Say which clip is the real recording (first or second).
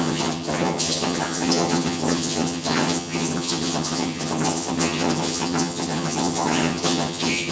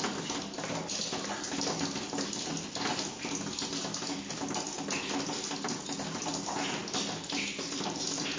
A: second